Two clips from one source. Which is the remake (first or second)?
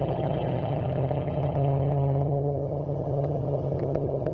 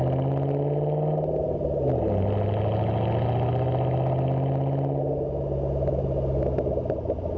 first